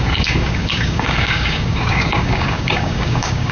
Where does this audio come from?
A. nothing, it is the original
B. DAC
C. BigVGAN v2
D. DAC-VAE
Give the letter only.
B